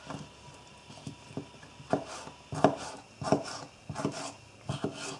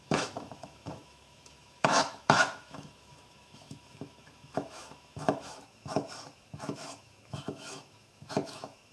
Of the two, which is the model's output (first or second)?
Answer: second